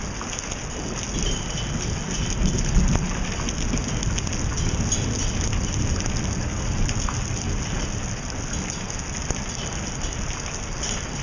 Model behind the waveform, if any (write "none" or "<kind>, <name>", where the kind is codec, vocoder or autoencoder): none